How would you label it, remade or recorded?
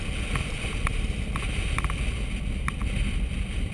recorded